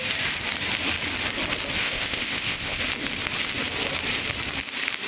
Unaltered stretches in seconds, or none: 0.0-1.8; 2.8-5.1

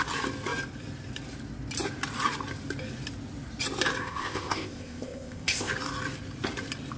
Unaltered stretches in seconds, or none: 0.0-4.0; 5.7-7.0

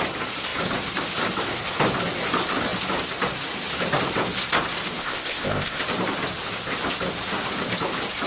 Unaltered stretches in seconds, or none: 0.0-5.0; 5.8-8.3

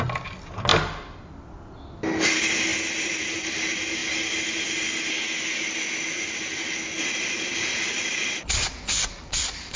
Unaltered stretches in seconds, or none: 0.0-9.8

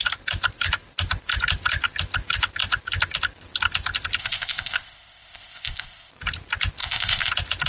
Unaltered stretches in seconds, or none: 0.0-4.2; 6.1-6.8; 7.3-7.7

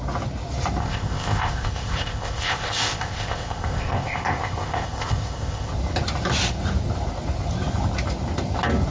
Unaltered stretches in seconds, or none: 0.0-0.8; 5.7-8.9

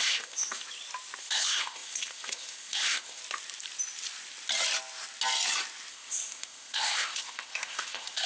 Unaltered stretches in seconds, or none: 0.6-1.2; 3.2-5.9